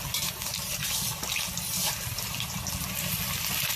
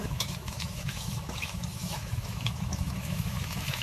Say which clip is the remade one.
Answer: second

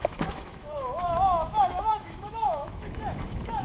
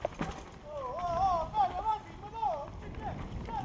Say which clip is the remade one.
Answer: first